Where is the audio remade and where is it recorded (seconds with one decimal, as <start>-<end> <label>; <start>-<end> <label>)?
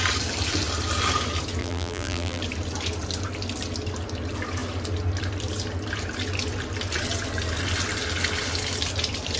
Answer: 0.0-1.6 recorded; 1.6-2.4 remade; 2.4-9.4 recorded